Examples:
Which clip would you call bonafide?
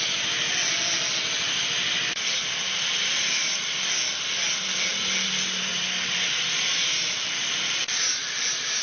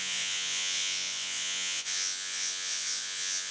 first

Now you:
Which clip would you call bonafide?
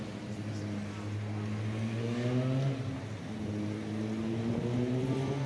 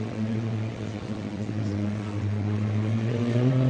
first